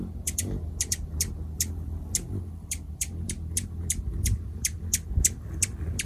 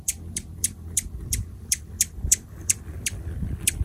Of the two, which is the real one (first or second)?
first